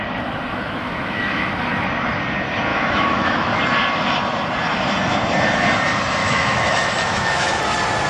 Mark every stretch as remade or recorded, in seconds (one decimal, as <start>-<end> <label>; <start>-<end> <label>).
0.0-0.5 recorded; 0.5-1.5 remade; 1.5-2.7 recorded; 2.7-3.6 remade; 3.6-6.2 recorded; 6.2-7.6 remade; 7.6-8.1 recorded